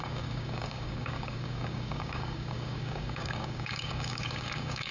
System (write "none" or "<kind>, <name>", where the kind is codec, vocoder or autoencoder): codec, DAC